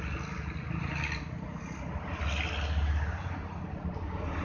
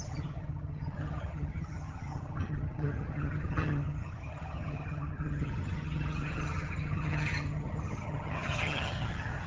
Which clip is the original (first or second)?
first